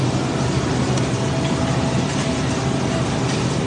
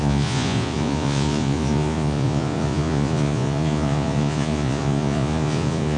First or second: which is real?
first